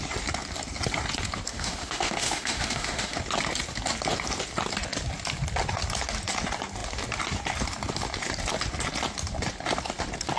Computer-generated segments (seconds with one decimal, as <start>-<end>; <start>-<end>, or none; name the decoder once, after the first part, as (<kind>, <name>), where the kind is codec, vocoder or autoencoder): 1.5-3.2 (autoencoder, DAC-VAE)